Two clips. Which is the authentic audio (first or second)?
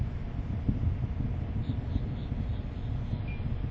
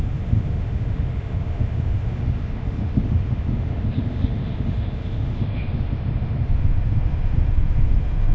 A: first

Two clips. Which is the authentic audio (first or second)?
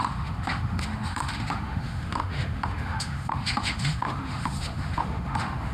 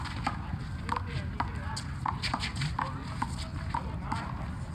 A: second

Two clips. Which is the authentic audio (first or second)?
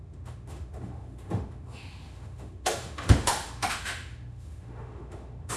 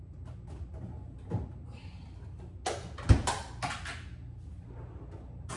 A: second